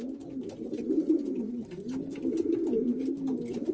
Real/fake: real